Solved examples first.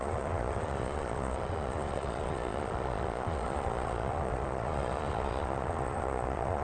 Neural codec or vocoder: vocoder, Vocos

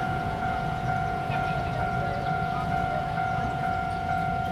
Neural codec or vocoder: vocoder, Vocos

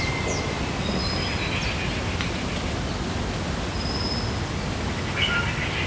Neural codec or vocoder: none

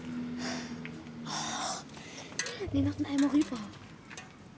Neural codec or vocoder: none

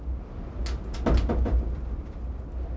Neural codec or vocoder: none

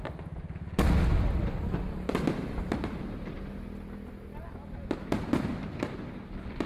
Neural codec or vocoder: none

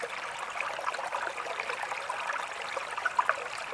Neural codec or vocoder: none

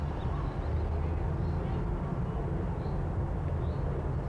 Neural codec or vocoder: none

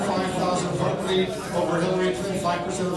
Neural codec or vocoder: none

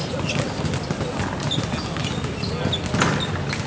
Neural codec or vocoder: none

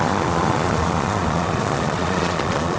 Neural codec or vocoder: vocoder, Vocos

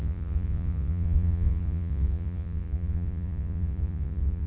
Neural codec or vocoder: vocoder, Vocos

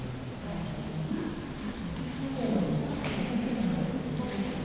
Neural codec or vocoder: none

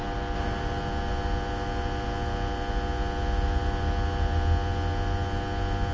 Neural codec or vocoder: none